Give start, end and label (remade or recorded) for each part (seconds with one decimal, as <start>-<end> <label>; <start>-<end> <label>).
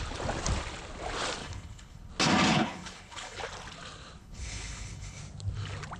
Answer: 0.0-1.4 recorded; 1.4-2.1 remade; 2.1-2.5 recorded; 2.5-3.4 remade; 3.4-4.2 recorded; 4.2-5.2 remade; 5.2-6.0 recorded